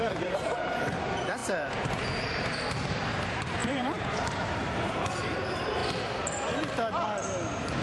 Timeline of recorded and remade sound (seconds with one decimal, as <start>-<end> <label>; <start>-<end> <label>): 0.0-5.8 remade; 5.8-7.8 recorded